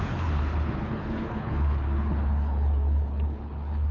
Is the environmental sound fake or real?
fake